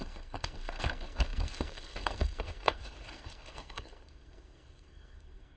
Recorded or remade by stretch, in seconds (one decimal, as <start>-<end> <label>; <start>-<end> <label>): 0.0-5.6 remade